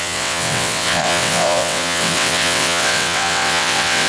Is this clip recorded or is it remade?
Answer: remade